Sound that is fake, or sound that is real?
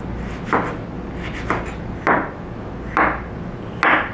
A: real